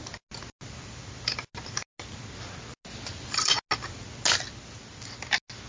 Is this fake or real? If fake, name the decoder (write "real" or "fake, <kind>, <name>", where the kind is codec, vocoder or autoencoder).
real